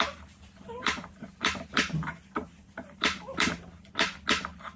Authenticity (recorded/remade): recorded